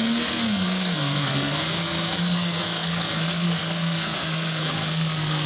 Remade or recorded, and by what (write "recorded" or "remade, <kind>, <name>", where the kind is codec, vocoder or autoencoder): remade, codec, SNAC